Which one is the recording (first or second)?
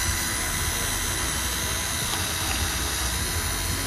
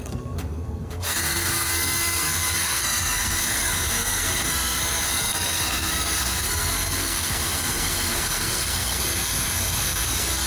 first